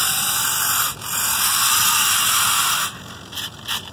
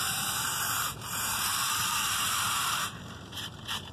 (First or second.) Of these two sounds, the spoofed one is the second